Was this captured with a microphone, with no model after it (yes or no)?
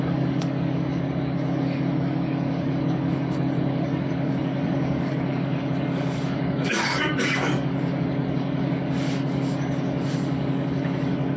no